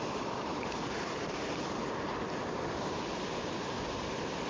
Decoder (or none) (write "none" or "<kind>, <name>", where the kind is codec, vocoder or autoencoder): none